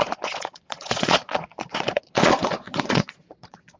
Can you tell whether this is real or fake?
fake